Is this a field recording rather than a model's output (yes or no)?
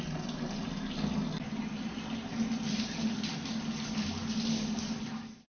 yes